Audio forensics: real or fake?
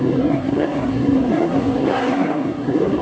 fake